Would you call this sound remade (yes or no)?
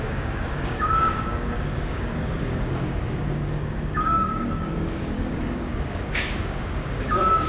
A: yes